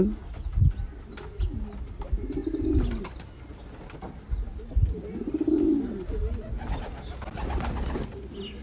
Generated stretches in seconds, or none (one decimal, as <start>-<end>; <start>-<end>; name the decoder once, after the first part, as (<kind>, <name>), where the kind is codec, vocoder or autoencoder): none